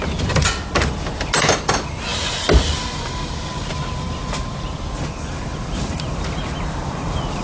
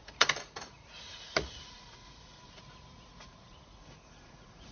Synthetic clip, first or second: second